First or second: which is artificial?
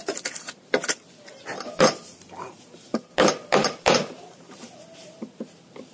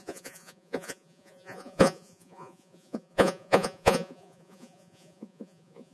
second